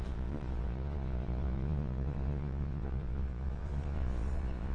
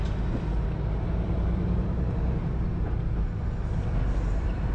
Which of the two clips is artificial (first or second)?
first